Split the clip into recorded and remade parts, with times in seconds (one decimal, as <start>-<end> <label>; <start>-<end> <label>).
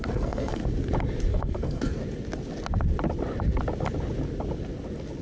0.0-0.6 remade; 0.6-1.3 recorded; 1.3-2.0 remade; 2.0-5.2 recorded